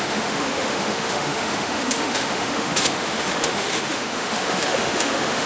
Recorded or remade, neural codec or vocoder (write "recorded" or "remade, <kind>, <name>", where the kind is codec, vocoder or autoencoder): remade, autoencoder, DAC-VAE